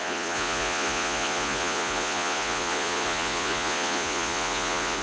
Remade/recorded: remade